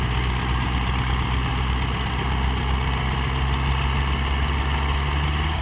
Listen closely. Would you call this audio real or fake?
real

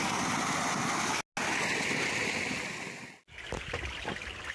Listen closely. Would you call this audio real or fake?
real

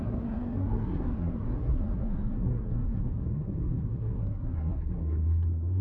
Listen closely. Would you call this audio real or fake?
fake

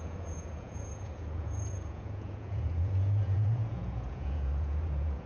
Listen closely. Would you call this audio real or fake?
fake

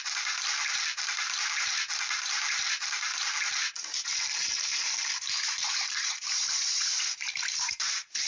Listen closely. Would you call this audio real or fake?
fake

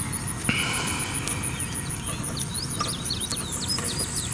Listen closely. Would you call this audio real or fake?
real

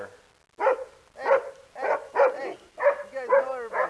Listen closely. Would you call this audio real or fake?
real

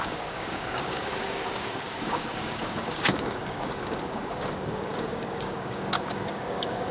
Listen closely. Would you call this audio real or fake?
fake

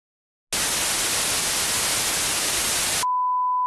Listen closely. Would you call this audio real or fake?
real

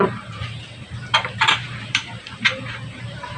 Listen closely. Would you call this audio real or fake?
fake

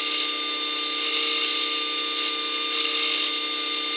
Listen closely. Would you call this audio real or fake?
real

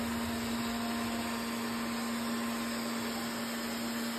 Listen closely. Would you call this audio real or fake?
real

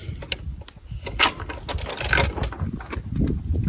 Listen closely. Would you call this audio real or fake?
real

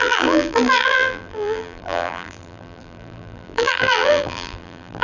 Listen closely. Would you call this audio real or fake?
fake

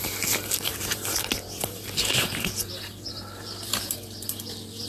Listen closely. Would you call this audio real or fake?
fake